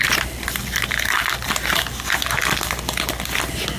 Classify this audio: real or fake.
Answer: real